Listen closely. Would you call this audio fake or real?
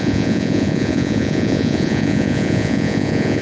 fake